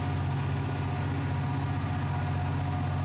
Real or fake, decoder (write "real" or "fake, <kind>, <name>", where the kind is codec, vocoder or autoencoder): real